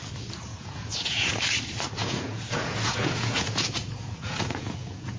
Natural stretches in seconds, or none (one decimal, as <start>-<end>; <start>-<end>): 0.0-0.5; 1.4-2.0